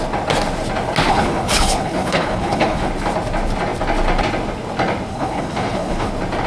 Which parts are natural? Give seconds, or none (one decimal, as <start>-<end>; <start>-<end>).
0.0-1.1; 2.9-5.1; 6.1-6.5